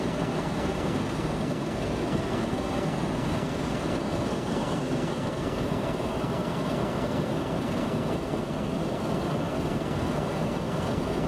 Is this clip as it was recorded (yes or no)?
no